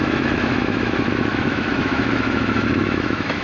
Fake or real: fake